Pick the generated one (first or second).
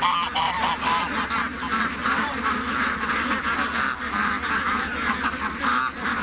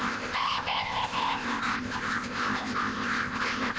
second